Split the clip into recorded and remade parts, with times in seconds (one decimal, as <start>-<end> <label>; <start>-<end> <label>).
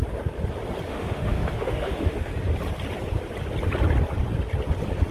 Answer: 0.0-0.9 recorded; 0.9-2.3 remade; 2.3-5.1 recorded